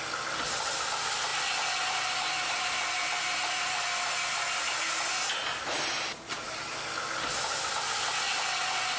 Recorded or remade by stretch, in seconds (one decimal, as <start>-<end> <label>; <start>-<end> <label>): 0.0-9.0 recorded